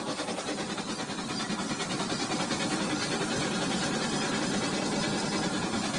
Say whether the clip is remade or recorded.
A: recorded